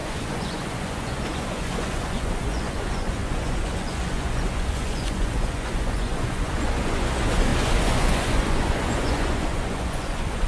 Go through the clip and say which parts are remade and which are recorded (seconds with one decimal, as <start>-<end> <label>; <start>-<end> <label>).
0.0-10.5 remade